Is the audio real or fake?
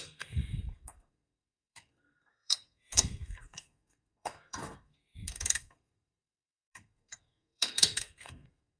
fake